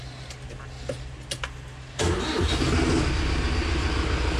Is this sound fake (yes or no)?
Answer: no